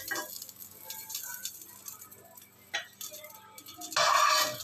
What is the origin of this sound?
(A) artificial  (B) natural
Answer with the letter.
B